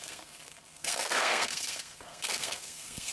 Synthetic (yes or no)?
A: yes